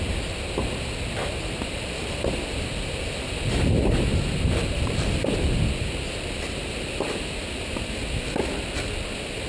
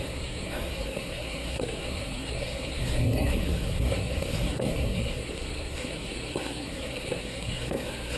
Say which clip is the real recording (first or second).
first